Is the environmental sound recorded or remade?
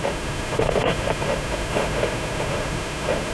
remade